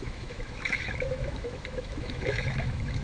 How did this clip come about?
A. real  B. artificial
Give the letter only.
B